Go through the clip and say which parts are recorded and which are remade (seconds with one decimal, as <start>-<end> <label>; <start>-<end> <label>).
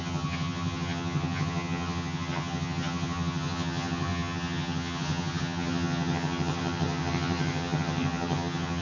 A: 0.0-8.8 remade